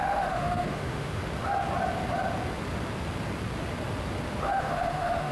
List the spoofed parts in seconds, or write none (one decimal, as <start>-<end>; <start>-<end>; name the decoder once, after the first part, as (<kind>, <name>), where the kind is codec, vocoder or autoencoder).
0.0-1.2 (autoencoder, DAC-VAE); 4.4-5.3